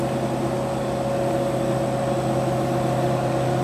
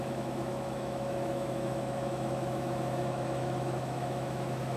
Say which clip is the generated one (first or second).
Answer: second